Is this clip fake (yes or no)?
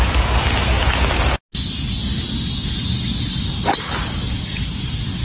no